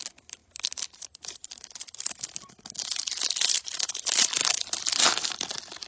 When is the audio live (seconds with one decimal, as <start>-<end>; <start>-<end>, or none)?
0.0-5.9